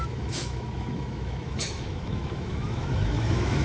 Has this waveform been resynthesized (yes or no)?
yes